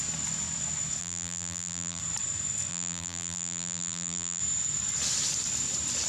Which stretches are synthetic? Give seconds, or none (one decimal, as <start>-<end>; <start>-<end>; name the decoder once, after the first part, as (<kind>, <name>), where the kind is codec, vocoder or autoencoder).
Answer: 1.0-2.0 (vocoder, BigVGAN v2); 2.7-4.4